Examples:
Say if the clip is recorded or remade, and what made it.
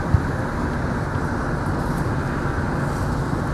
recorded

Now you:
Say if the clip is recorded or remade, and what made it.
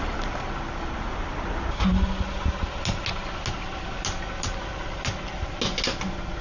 recorded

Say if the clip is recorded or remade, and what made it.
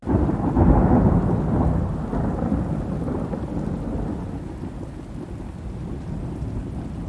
recorded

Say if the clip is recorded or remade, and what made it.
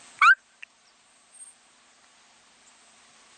recorded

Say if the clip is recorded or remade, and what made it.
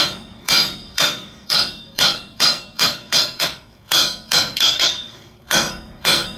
remade, codec, SNAC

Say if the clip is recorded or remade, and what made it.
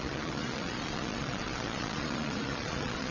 remade, vocoder, Vocos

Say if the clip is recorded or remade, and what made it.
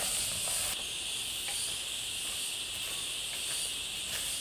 recorded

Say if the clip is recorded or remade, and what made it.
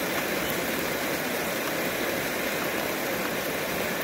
recorded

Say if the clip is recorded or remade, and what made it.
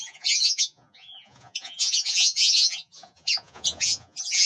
remade, vocoder, Vocos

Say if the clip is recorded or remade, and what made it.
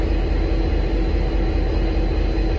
recorded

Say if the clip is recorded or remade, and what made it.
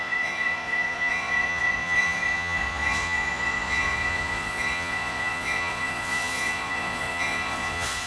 remade, vocoder, Vocos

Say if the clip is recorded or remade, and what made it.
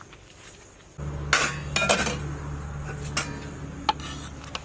recorded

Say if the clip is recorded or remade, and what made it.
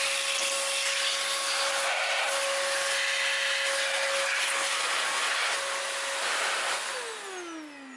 recorded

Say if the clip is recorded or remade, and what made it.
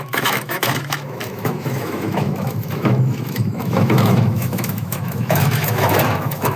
remade, autoencoder, DAC-VAE